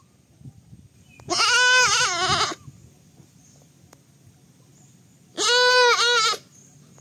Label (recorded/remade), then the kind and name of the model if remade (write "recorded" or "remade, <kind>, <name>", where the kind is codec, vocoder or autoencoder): recorded